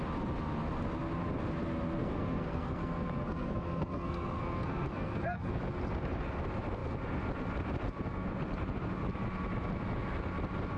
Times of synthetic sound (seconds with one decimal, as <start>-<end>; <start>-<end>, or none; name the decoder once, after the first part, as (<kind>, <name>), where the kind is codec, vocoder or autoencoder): 2.0-5.6 (codec, SNAC)